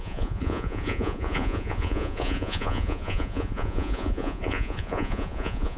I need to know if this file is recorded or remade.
remade